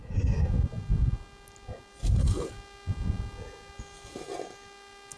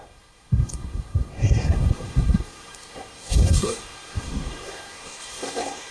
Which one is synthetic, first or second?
second